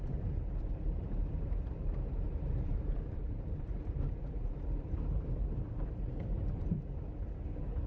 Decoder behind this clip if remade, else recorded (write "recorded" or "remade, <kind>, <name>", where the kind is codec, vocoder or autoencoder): remade, vocoder, BigVGAN v2